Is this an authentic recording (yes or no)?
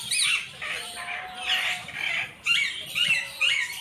yes